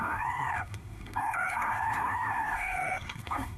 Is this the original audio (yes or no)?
no